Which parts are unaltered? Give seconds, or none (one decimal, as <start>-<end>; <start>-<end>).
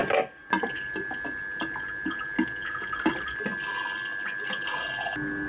0.0-5.5